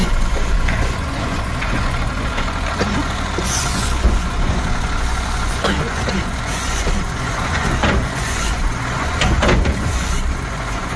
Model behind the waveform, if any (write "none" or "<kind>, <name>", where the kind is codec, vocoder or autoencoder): vocoder, Vocos